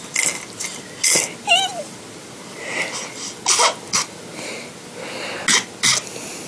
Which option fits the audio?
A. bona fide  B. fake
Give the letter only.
A